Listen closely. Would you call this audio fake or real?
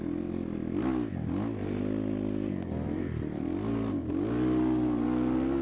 real